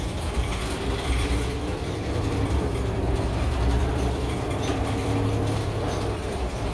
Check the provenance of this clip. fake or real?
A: fake